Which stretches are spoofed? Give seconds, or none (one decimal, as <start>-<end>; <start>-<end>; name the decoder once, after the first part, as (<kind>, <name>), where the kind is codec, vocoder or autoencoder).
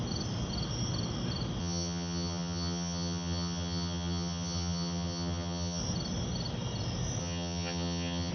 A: 1.6-5.8 (vocoder, HiFi-GAN); 7.2-8.3